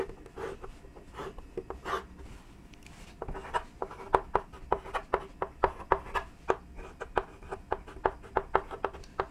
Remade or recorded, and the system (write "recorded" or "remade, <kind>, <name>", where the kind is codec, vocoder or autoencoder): remade, vocoder, BigVGAN v2